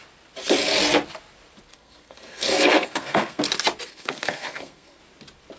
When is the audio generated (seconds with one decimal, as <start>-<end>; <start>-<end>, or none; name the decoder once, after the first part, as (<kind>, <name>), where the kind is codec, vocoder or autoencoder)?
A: 1.7-3.4 (codec, SNAC); 3.9-5.0